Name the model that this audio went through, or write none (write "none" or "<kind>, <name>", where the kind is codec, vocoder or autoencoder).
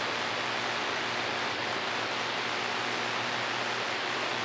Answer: none